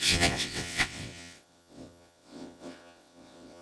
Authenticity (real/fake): fake